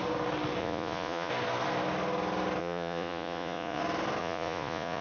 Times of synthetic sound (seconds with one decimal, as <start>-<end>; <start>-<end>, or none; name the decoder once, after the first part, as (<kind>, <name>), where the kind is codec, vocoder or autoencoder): 0.6-1.3 (vocoder, Vocos); 2.6-3.8; 4.2-5.0